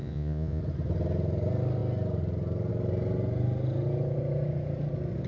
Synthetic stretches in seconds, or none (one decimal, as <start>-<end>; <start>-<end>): 0.0-0.6